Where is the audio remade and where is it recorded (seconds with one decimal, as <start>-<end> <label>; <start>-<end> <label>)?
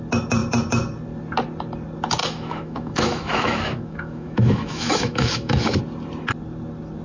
0.0-2.2 recorded; 2.2-5.8 remade; 5.8-7.0 recorded